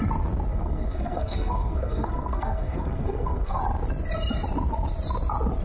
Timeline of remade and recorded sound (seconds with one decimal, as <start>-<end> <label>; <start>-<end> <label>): 0.0-0.5 recorded; 0.5-3.6 remade; 3.6-5.6 recorded